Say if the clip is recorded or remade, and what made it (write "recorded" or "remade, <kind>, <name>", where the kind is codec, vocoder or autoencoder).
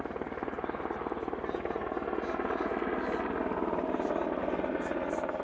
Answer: recorded